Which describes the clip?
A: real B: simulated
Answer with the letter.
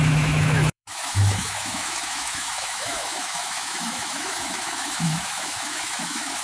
B